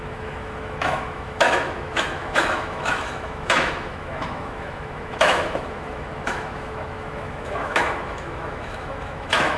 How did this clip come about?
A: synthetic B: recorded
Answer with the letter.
A